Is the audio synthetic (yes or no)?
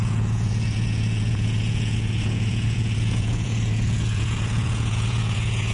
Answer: yes